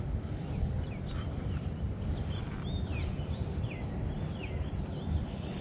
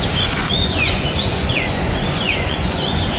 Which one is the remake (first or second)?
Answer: second